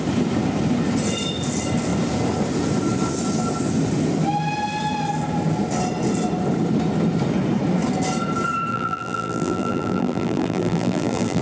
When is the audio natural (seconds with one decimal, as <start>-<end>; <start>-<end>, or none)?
0.0-8.7